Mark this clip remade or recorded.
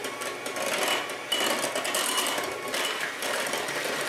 recorded